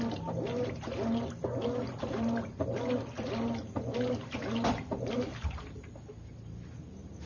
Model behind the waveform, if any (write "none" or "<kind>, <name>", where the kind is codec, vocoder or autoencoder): none